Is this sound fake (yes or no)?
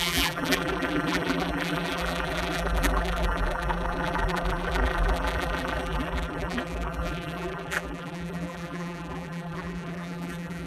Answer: yes